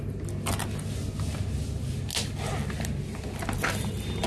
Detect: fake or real real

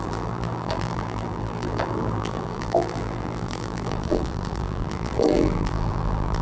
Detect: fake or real fake